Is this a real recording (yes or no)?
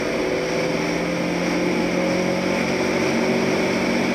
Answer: yes